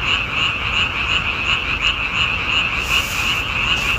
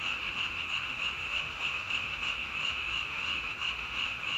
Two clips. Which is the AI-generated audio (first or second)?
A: second